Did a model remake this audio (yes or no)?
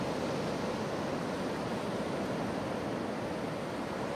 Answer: no